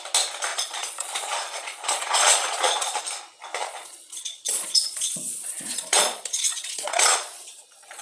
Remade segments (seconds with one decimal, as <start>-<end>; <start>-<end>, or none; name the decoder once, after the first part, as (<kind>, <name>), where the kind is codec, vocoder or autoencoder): 0.5-3.0 (vocoder, Vocos); 3.6-8.0